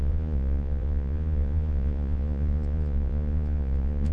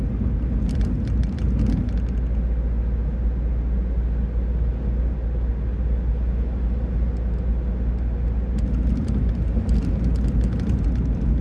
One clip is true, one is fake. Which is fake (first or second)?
first